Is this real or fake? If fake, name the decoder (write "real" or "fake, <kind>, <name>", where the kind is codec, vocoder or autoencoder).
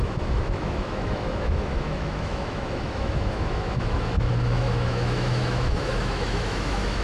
fake, autoencoder, DAC-VAE